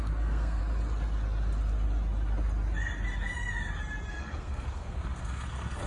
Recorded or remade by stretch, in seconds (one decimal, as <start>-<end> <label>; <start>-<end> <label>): 0.0-0.6 remade; 0.6-4.1 recorded; 4.1-5.9 remade